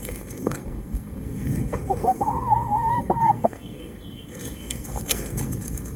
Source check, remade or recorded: remade